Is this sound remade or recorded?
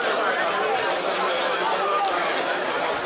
recorded